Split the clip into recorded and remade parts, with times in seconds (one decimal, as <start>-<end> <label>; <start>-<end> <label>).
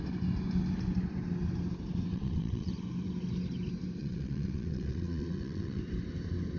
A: 0.0-2.1 recorded; 2.1-2.7 remade; 2.7-4.0 recorded; 4.0-5.8 remade; 5.8-6.6 recorded